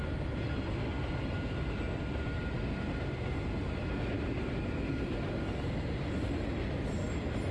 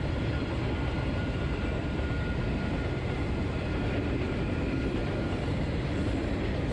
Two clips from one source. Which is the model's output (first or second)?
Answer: second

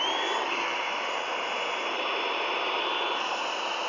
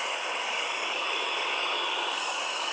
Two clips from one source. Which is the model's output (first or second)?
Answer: second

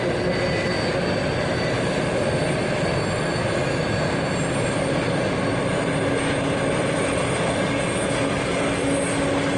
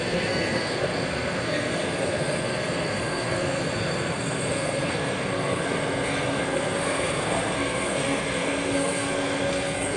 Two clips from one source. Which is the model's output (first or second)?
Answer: second